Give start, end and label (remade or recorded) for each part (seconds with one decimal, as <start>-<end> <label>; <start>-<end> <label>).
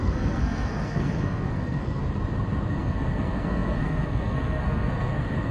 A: 0.0-2.0 remade; 2.0-2.7 recorded; 2.7-5.5 remade